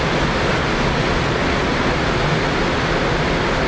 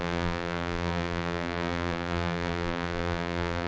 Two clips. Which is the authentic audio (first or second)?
first